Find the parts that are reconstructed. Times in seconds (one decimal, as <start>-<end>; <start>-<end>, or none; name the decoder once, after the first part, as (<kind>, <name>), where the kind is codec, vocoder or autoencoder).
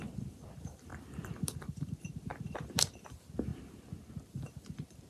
0.0-0.9 (vocoder, BigVGAN v2); 1.4-5.1